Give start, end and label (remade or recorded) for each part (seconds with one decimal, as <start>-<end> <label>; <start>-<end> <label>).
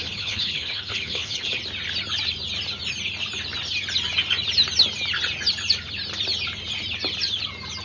0.0-1.6 remade; 1.6-7.8 recorded